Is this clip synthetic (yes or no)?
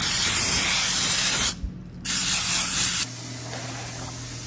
no